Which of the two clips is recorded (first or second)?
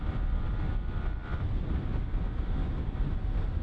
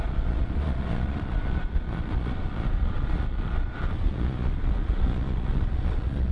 first